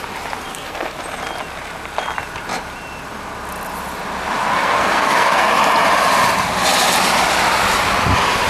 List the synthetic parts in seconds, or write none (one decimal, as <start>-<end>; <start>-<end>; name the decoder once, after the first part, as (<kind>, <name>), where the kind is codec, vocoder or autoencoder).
0.5-1.0 (codec, SNAC); 4.4-5.5